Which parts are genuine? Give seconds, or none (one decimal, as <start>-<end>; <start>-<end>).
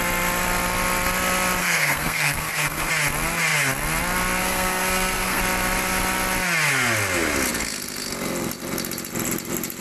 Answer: 0.0-1.6; 2.9-4.4; 5.4-9.8